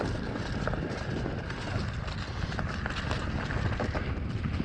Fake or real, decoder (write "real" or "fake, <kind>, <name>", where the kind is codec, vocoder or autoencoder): real